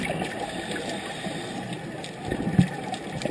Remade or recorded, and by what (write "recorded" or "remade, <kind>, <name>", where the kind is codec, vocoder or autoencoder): recorded